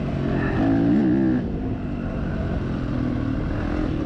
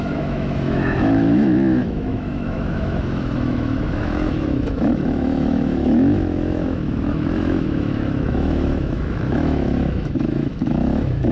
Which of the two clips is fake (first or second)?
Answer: second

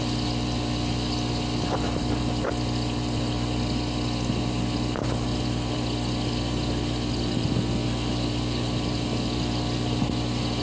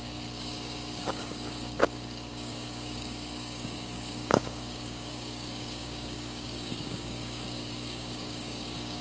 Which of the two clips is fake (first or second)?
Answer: second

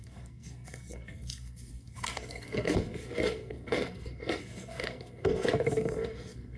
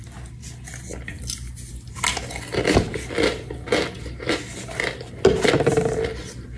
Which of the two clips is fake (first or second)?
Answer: first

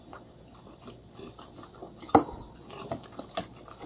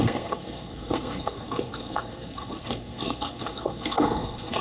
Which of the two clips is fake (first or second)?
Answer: second